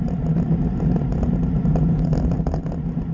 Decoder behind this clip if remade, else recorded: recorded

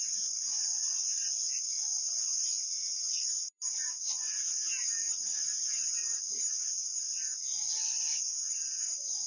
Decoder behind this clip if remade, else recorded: recorded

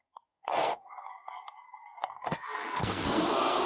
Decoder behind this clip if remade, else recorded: remade, codec, SNAC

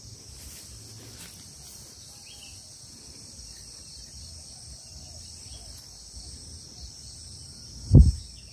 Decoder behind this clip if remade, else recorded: recorded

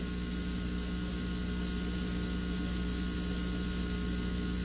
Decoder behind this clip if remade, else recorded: recorded